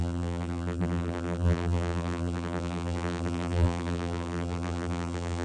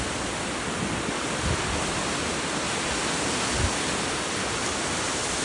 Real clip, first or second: second